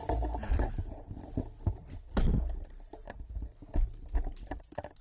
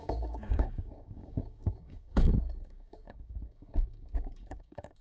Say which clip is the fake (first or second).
second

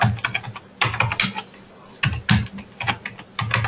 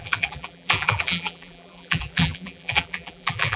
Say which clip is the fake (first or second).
second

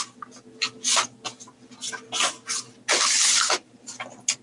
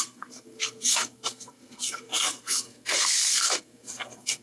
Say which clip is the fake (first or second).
second